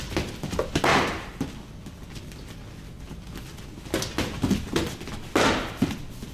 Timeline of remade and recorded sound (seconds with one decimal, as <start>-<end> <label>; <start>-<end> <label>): 0.0-6.3 recorded